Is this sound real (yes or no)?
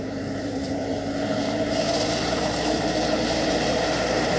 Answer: no